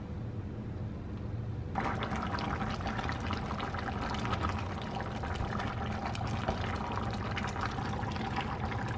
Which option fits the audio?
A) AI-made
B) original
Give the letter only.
B